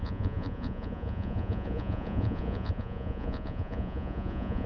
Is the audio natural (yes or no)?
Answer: no